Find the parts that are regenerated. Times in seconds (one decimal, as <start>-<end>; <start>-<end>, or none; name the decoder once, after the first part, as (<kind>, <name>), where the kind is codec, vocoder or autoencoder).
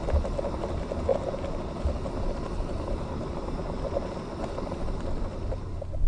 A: none